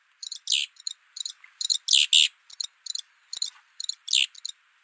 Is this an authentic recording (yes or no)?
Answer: yes